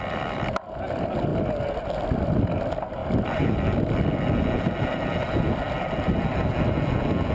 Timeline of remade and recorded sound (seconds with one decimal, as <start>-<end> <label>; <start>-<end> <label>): 0.0-7.3 recorded